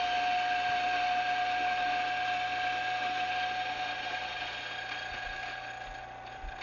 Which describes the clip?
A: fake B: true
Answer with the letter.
B